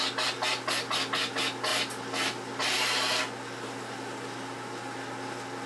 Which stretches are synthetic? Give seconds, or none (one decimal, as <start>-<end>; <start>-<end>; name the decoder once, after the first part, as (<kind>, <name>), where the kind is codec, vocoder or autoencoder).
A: 1.7-3.2 (vocoder, BigVGAN v2)